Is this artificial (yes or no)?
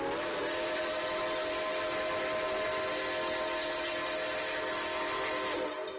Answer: no